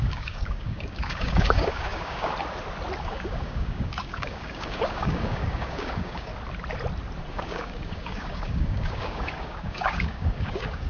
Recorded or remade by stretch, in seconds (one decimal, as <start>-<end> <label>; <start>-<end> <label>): 0.0-2.3 remade; 2.3-3.0 recorded; 3.0-6.3 remade; 6.3-7.3 recorded; 7.3-10.9 remade